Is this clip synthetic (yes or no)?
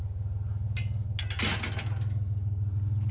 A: no